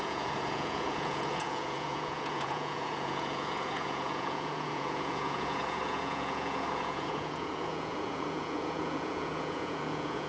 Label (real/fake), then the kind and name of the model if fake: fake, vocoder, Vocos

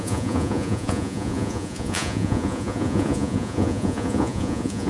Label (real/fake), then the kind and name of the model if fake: fake, vocoder, Vocos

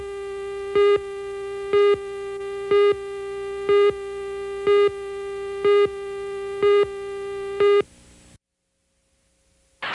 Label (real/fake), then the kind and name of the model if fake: real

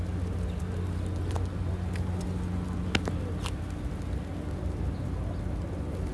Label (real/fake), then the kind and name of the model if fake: real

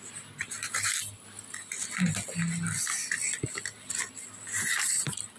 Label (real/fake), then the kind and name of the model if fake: real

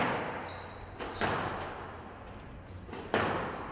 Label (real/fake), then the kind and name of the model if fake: real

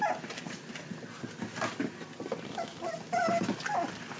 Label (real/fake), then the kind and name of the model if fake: real